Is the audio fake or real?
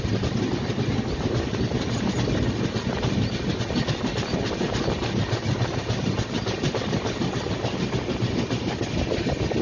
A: real